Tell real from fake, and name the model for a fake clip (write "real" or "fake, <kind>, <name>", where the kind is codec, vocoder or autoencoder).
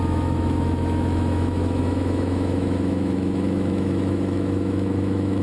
fake, autoencoder, DAC-VAE